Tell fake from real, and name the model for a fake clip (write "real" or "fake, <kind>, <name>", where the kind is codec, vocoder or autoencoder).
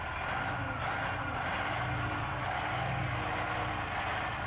real